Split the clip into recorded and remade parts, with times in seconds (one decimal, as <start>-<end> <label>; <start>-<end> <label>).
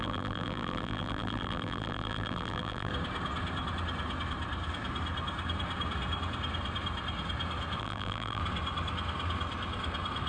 0.0-2.9 remade; 2.9-7.8 recorded; 7.8-8.4 remade; 8.4-10.3 recorded